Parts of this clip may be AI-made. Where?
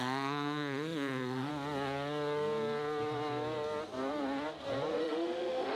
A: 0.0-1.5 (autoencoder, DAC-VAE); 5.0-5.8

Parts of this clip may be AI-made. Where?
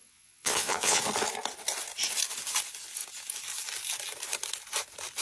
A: 0.0-1.0 (vocoder, Vocos)